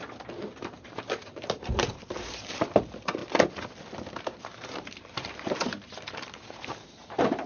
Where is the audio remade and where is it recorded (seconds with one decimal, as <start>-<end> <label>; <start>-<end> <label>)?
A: 0.0-3.2 remade; 3.2-4.2 recorded; 4.2-7.5 remade